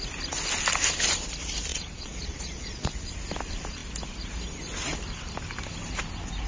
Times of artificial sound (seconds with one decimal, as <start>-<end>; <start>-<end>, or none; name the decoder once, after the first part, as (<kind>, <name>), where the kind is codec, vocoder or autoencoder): 1.7-2.9 (vocoder, Vocos)